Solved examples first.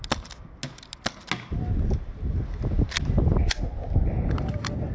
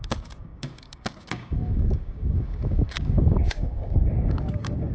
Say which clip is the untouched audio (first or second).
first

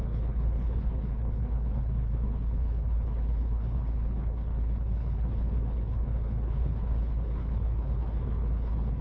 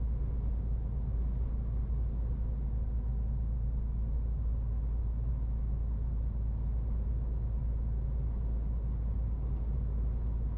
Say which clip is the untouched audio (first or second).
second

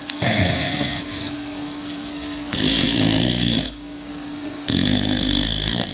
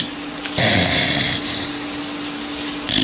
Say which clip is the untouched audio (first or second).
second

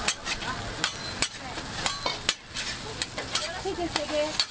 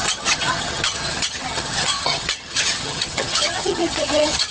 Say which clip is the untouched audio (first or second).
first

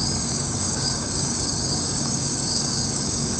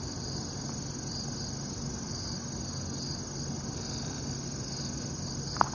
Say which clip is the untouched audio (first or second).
second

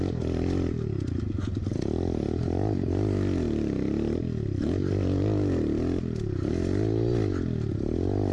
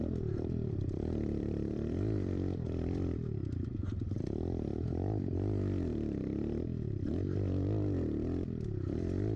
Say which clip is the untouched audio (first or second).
first